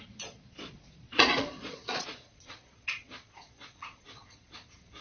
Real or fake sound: fake